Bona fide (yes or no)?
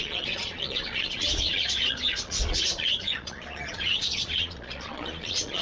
no